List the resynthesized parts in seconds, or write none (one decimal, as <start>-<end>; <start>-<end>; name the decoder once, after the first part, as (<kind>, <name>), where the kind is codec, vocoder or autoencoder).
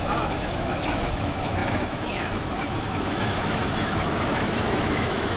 0.0-5.4 (autoencoder, DAC-VAE)